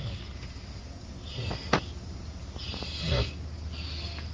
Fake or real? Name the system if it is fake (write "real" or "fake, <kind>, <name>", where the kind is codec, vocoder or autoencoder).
real